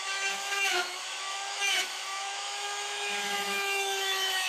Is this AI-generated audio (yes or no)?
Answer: yes